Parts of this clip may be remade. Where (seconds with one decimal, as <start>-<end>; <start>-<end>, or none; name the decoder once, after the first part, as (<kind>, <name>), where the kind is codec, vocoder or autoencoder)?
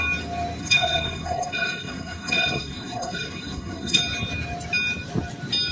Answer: 0.6-4.0 (codec, SNAC)